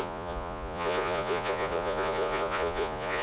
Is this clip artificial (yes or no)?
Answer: yes